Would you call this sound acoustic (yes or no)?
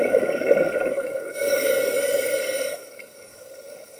no